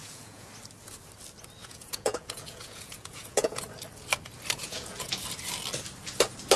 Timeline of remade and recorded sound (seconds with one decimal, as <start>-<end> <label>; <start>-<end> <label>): 0.0-0.5 remade; 0.5-1.6 recorded; 1.6-3.6 remade; 3.6-4.6 recorded; 4.6-5.1 remade; 5.1-6.6 recorded